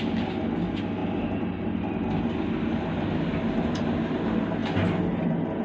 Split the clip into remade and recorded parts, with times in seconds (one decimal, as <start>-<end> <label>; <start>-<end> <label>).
0.0-5.6 recorded